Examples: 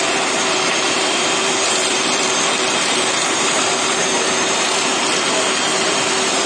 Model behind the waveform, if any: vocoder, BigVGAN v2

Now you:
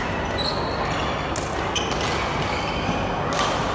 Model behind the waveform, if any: none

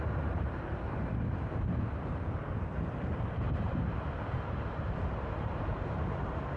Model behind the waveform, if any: vocoder, BigVGAN v2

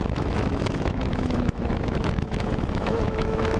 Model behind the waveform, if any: autoencoder, DAC-VAE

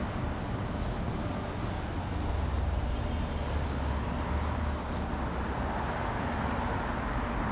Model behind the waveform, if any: none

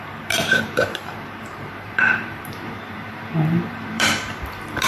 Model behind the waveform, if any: vocoder, BigVGAN v2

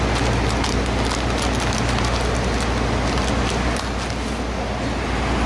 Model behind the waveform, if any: none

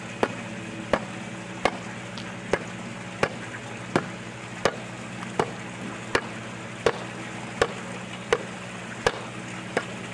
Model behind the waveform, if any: none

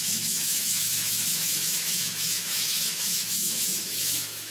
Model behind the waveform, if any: autoencoder, DAC-VAE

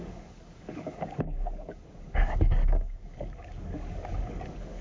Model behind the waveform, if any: codec, DAC